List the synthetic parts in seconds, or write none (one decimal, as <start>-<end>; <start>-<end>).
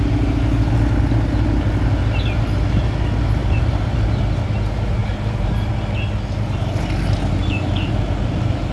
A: 3.4-4.1; 5.0-5.7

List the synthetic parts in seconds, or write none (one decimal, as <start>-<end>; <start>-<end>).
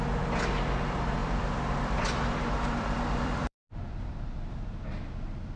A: 1.2-4.6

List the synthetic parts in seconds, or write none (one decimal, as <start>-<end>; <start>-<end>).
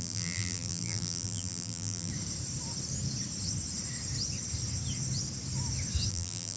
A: 0.0-2.1; 6.1-6.6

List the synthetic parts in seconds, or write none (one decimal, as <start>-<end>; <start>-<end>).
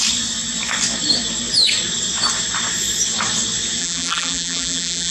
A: 3.8-5.1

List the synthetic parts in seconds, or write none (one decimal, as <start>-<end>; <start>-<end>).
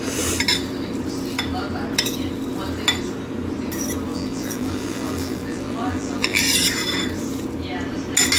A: 4.1-6.4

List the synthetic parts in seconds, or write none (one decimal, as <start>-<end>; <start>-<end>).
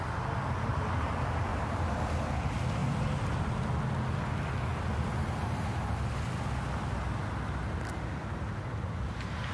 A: 1.5-2.4; 2.8-3.4; 8.3-9.5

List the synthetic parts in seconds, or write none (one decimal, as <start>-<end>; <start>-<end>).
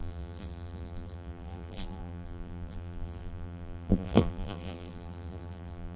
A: 0.0-6.0